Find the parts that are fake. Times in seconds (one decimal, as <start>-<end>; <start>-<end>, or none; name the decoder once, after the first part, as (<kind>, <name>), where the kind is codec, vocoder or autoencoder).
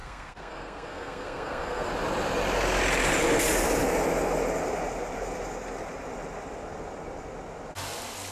0.0-1.9 (codec, SNAC)